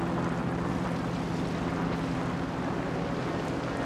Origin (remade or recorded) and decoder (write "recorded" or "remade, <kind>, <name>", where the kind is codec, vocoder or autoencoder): recorded